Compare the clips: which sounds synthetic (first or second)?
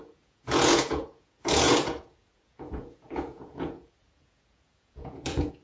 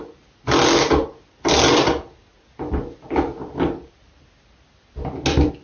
first